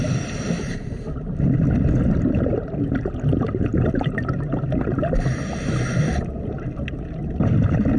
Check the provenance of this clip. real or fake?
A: real